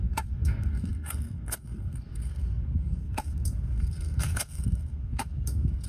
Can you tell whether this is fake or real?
fake